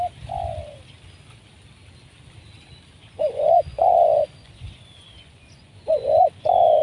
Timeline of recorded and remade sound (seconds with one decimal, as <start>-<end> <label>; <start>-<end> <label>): 0.0-3.0 recorded; 3.0-6.8 remade